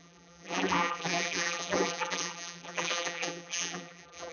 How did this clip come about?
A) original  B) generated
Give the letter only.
B